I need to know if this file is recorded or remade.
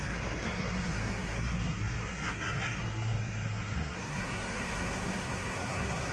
remade